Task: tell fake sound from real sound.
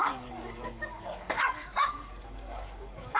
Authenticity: fake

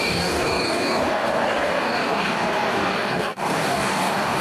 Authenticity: fake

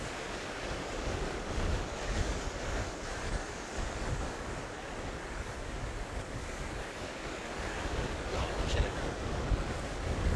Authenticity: fake